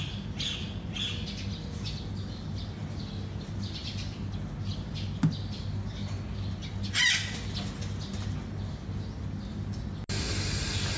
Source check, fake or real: real